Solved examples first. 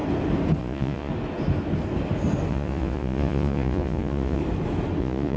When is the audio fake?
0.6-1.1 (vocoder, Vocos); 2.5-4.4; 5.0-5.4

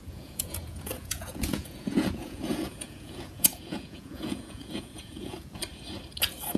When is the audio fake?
0.0-5.6 (vocoder, Vocos)

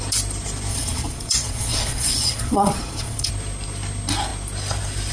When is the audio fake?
0.7-3.3 (vocoder, Vocos)

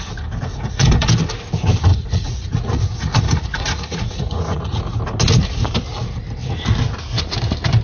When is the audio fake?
0.5-1.1 (vocoder, Vocos); 1.9-4.8

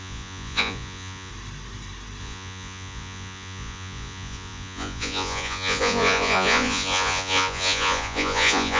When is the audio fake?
0.0-1.3 (vocoder, Vocos); 2.2-8.8